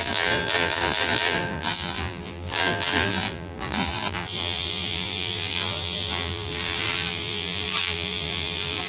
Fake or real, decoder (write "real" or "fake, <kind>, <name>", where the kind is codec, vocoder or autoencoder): fake, vocoder, BigVGAN v2